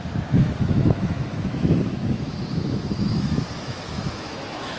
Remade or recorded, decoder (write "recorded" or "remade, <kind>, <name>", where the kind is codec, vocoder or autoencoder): remade, autoencoder, DAC-VAE